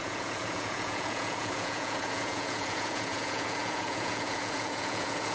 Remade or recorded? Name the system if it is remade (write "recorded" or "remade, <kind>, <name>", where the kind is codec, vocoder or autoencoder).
remade, vocoder, Vocos